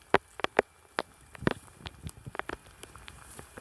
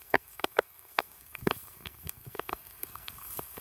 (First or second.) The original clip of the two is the first